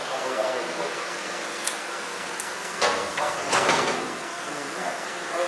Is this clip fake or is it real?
fake